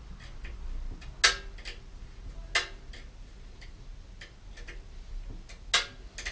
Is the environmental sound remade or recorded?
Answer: recorded